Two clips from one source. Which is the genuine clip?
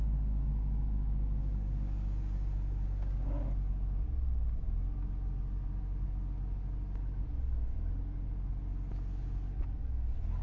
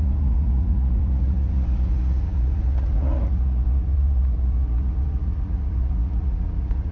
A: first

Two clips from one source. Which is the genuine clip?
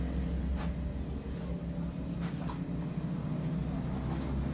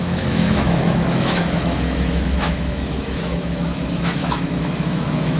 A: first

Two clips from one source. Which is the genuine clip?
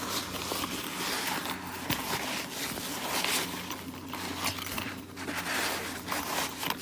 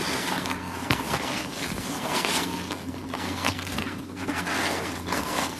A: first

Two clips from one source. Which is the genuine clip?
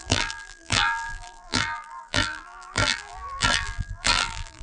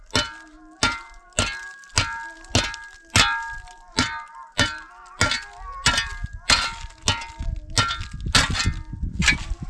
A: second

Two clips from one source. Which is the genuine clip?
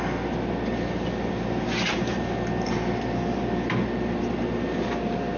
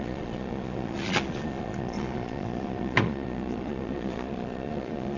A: first